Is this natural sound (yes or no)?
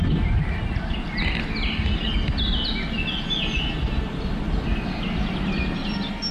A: yes